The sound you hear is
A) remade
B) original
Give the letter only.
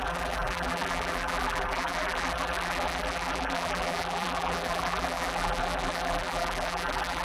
A